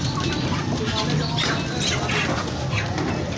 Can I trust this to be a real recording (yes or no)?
yes